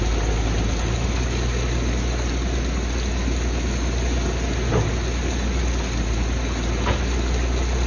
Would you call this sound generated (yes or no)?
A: no